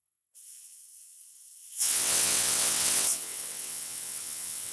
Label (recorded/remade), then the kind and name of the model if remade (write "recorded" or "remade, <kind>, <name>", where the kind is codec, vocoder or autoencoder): remade, vocoder, WaveNeXt